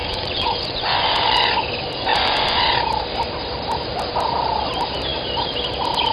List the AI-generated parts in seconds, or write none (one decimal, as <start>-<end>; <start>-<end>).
0.0-1.5; 2.1-2.7